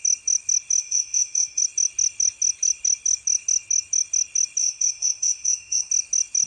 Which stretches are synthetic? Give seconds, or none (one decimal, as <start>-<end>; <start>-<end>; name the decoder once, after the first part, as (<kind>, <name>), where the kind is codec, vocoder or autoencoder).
0.8-1.6 (autoencoder, DAC-VAE); 4.6-5.9

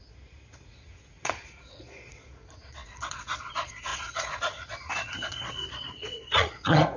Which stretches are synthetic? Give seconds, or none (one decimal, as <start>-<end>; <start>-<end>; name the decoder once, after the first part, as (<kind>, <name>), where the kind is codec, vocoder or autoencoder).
0.0-7.0 (vocoder, Vocos)

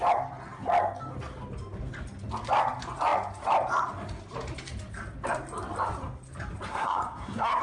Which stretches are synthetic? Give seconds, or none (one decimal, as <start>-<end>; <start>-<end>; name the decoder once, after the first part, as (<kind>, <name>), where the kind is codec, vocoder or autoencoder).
6.7-7.6 (codec, SNAC)

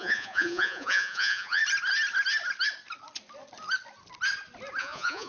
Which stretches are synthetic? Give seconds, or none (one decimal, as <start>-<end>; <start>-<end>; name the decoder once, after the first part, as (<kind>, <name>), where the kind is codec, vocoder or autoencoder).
0.0-1.6 (vocoder, Vocos); 4.8-5.3